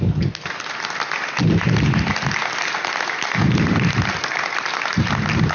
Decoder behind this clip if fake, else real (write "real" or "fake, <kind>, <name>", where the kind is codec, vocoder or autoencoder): real